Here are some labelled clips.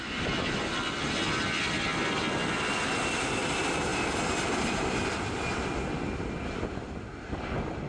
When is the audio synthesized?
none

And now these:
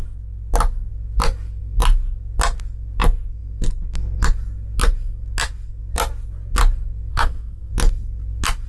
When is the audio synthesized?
7.1-7.7 (codec, SNAC)

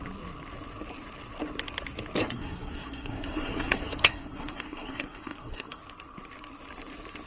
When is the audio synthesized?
2.2-5.8 (codec, SNAC)

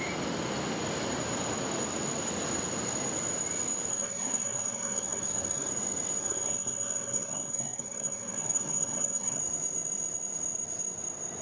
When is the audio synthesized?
3.9-5.7 (codec, SNAC); 6.2-9.4

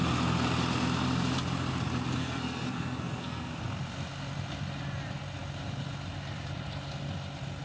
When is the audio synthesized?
2.2-3.5 (codec, SNAC)

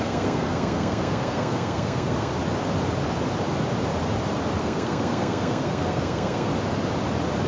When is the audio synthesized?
0.0-2.3 (codec, SNAC); 4.6-6.5